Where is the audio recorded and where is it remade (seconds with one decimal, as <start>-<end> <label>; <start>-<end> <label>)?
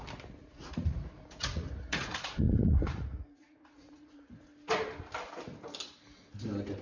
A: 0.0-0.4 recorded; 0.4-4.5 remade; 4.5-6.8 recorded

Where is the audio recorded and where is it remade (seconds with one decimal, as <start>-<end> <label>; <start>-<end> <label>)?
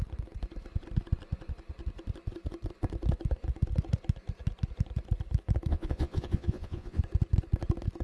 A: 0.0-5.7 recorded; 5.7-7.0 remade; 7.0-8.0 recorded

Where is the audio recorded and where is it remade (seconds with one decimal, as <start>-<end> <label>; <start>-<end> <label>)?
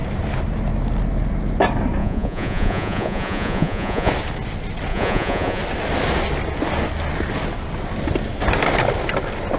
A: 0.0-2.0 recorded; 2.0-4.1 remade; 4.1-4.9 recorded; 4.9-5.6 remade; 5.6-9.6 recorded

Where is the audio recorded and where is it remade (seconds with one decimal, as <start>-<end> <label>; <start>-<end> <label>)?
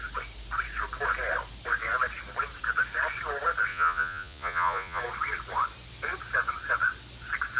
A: 0.0-3.7 recorded; 3.7-5.0 remade; 5.0-7.6 recorded